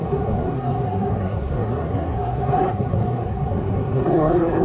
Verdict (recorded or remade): remade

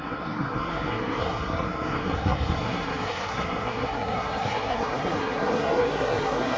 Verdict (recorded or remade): remade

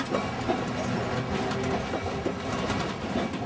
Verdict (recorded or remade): recorded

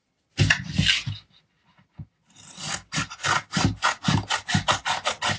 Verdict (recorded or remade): recorded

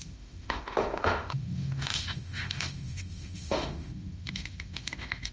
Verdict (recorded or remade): remade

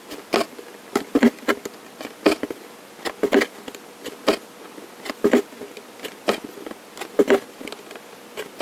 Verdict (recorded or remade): recorded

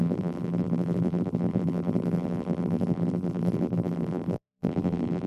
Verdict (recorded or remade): remade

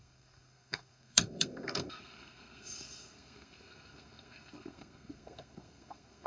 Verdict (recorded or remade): remade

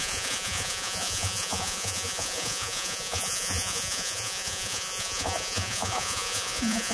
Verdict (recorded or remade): remade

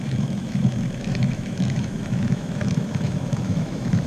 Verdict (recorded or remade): remade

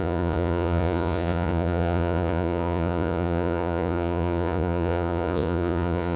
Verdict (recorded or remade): remade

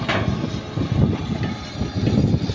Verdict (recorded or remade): recorded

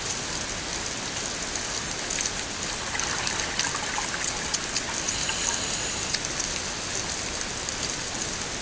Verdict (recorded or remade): recorded